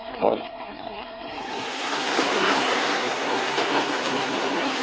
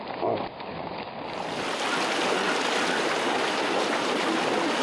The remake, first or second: first